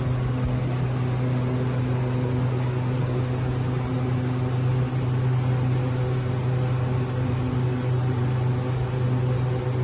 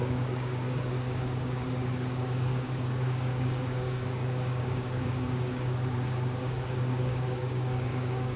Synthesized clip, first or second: second